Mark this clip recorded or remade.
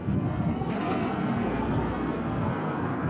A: remade